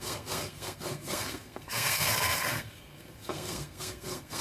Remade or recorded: remade